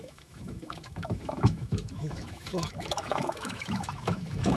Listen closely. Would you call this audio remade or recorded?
remade